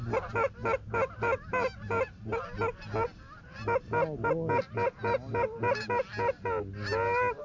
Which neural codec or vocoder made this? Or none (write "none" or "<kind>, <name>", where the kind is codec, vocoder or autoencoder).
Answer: none